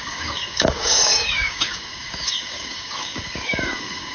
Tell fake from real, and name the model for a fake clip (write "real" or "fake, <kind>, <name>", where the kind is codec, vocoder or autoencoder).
fake, codec, DAC